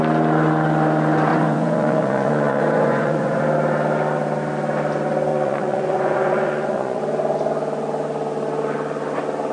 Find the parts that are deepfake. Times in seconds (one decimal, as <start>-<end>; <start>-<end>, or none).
1.3-3.4; 5.3-7.0